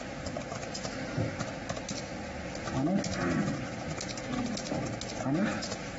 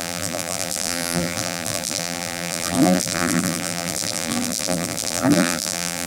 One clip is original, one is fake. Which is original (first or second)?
first